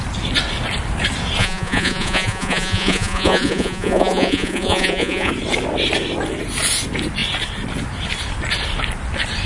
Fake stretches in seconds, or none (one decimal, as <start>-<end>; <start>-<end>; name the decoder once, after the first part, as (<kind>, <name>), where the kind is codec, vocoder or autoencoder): 1.4-5.3 (vocoder, Vocos)